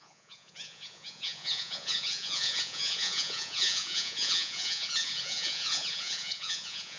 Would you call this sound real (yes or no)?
no